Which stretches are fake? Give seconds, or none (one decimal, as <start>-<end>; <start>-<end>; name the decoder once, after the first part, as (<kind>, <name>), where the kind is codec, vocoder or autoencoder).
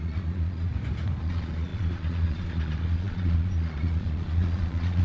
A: 0.0-0.7 (vocoder, Vocos); 1.2-5.0